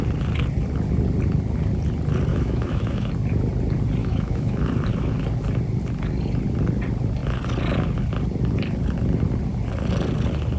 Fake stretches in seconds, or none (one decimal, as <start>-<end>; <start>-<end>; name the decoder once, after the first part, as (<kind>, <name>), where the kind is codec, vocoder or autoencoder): 2.3-3.1 (autoencoder, DAC-VAE); 4.0-4.6